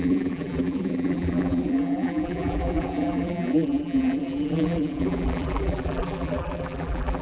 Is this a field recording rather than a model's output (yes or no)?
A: no